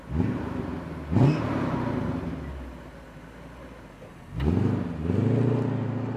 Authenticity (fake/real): real